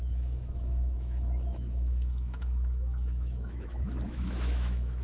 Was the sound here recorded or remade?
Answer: remade